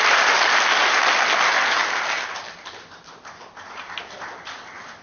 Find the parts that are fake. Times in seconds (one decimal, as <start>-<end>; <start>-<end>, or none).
none